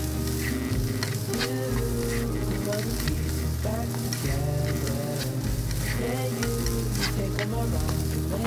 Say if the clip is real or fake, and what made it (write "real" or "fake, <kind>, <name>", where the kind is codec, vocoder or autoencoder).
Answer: real